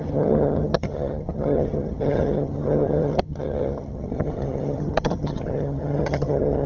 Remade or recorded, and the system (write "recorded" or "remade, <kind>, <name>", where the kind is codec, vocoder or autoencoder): remade, vocoder, HiFi-GAN